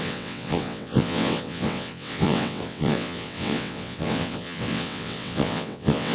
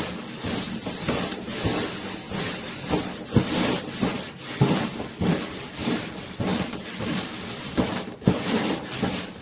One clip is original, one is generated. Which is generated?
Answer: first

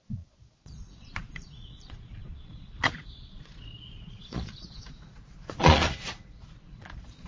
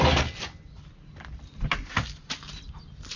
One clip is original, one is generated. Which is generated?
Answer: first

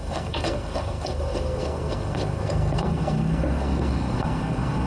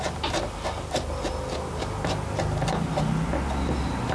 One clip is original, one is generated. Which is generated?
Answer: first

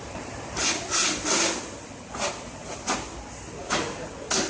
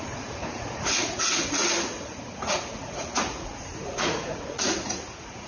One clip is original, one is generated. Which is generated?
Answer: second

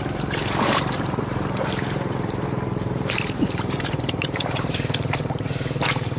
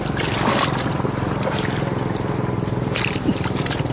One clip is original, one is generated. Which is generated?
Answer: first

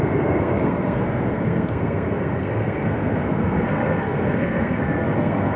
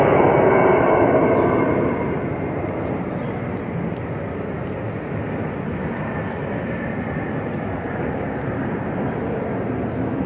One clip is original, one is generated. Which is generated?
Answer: first